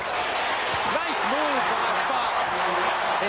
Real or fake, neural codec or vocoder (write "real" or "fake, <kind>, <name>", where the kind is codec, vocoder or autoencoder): real